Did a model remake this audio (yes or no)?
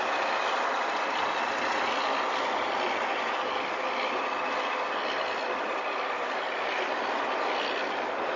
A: no